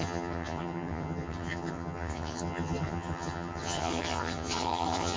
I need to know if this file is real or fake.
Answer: fake